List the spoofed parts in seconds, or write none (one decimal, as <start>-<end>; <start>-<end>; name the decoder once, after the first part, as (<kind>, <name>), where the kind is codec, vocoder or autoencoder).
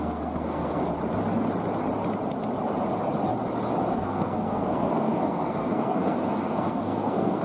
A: 0.0-0.9 (codec, SNAC); 3.9-7.4